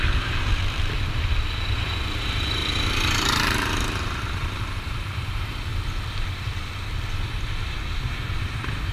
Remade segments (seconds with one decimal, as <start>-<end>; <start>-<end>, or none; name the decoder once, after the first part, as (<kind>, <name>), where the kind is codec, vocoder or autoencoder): 0.0-0.6 (vocoder, BigVGAN v2); 1.8-5.7; 8.4-8.9